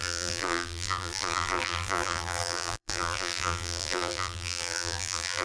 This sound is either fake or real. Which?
fake